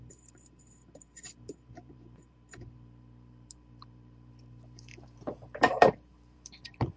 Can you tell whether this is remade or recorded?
remade